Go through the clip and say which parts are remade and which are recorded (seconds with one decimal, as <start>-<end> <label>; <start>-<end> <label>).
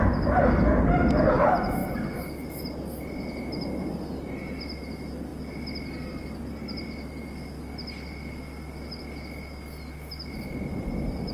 0.0-11.3 recorded